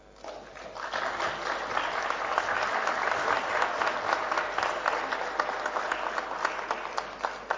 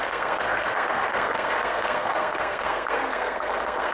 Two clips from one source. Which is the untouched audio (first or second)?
first